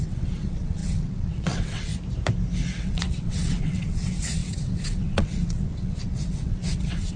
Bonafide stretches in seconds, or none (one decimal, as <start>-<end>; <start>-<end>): 1.9-2.8